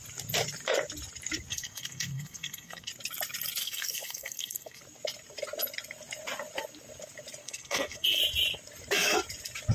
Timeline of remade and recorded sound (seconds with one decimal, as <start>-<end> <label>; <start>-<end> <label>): 0.0-1.5 recorded; 1.5-2.9 remade; 2.9-3.6 recorded; 3.6-4.8 remade; 4.8-7.4 recorded; 7.4-8.2 remade; 8.2-9.7 recorded